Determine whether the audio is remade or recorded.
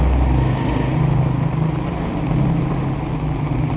recorded